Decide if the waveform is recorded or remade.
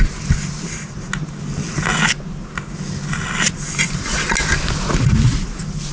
recorded